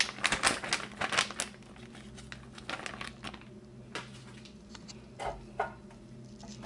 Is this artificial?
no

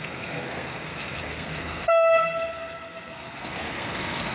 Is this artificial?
yes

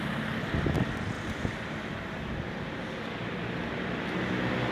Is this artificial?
no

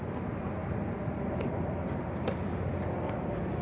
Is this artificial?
no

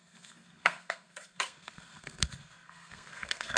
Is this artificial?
yes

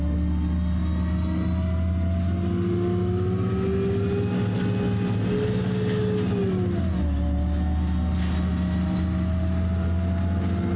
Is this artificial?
no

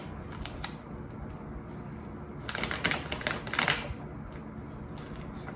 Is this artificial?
no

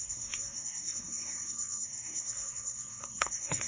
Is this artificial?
yes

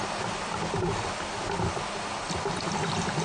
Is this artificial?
no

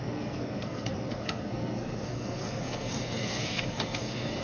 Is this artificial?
yes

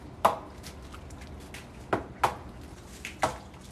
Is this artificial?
no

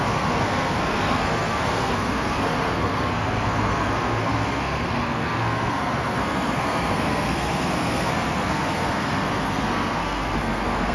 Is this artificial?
yes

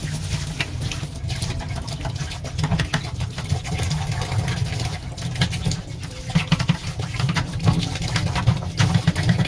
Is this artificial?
no